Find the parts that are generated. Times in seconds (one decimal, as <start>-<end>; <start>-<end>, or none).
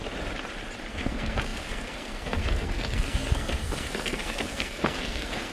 0.9-5.5